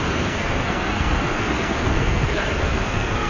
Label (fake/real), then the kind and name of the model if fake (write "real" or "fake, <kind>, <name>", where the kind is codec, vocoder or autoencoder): fake, codec, SNAC